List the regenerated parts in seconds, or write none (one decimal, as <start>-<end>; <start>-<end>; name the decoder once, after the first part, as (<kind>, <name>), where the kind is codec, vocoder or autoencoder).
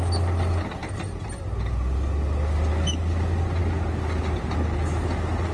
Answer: none